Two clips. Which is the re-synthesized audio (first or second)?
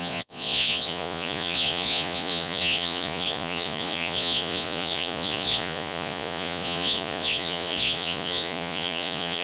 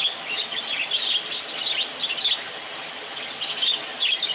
first